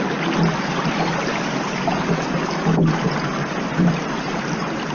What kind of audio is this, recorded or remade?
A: recorded